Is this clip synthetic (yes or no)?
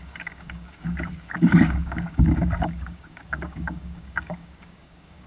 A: yes